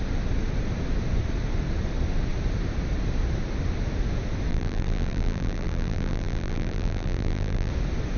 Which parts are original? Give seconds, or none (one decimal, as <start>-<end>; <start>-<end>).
0.0-4.5; 7.7-8.2